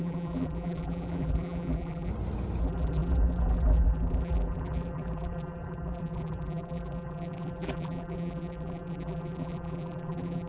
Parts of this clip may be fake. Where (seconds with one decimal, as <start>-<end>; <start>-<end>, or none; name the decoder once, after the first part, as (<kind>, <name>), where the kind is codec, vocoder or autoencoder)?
0.0-2.1 (vocoder, BigVGAN v2); 2.6-10.5